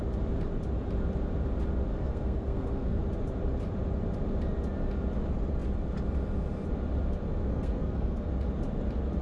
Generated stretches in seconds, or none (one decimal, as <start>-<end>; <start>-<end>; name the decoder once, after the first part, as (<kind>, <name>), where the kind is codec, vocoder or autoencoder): 1.9-3.0 (codec, SNAC); 7.4-8.3